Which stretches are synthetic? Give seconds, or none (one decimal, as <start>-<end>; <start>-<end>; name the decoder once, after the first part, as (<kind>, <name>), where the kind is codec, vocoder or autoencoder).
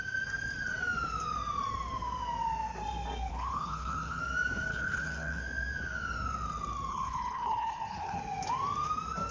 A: 3.3-4.2 (codec, HILCodec); 4.7-5.4; 6.9-8.2